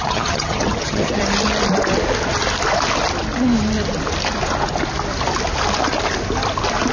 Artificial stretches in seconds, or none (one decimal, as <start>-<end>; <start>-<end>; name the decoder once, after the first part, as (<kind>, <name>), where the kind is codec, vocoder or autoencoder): 0.0-1.2 (vocoder, HiFi-GAN)